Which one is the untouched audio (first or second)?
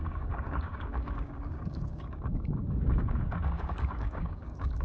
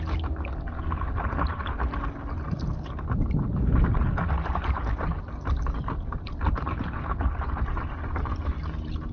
second